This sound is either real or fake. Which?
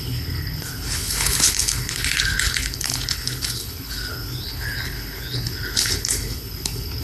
fake